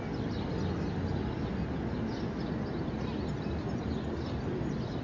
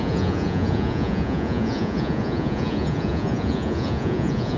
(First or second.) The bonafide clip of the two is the first